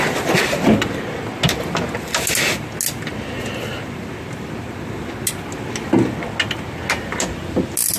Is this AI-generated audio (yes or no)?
no